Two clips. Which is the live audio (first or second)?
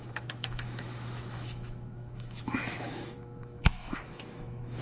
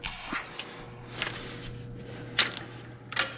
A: second